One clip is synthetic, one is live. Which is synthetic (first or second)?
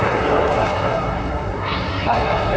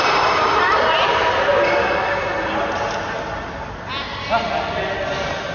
first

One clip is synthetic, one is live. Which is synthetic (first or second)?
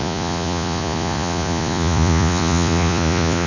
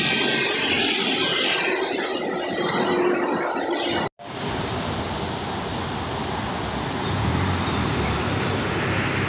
first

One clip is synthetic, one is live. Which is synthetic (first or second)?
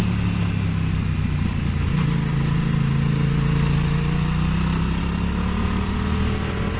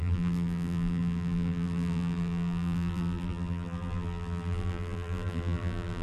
second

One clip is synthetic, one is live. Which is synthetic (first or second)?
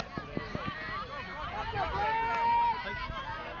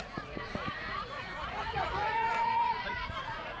second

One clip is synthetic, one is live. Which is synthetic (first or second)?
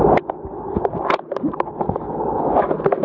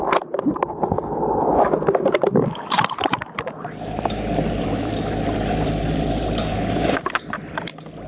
second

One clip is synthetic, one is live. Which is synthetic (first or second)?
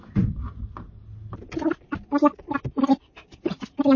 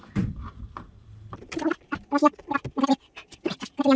second